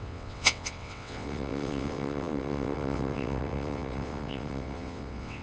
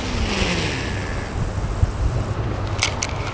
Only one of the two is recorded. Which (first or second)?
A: second